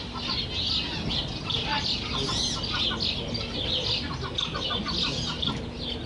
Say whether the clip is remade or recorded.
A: recorded